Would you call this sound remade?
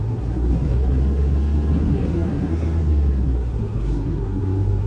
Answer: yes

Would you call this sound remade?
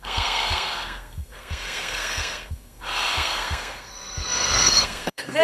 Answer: yes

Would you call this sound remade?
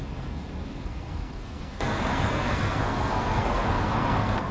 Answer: yes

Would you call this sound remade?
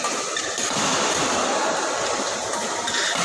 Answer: no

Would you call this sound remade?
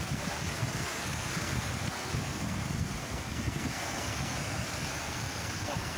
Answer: yes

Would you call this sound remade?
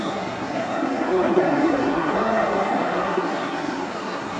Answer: yes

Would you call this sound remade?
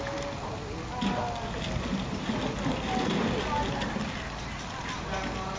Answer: no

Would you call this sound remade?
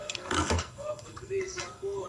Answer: yes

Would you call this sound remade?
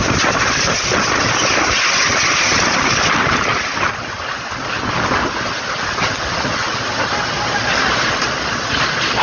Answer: no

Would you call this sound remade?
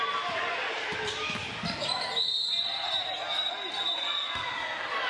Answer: no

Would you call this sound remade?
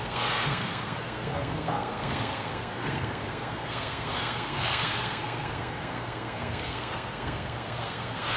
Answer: yes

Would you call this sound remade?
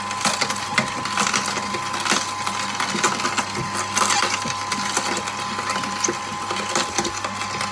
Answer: no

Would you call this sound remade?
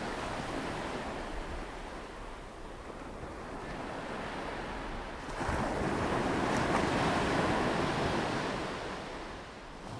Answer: no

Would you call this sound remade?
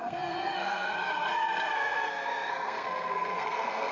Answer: yes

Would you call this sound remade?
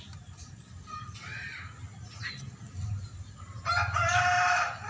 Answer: no